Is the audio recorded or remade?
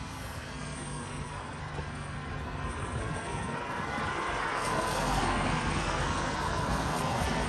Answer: remade